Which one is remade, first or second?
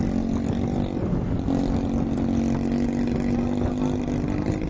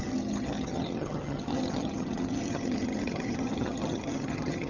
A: second